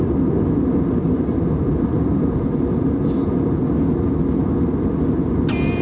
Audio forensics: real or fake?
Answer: real